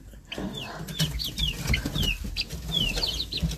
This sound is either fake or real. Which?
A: real